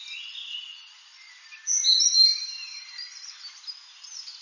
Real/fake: real